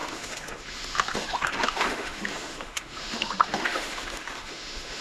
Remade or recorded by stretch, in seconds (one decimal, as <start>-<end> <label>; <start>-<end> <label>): 0.0-5.0 remade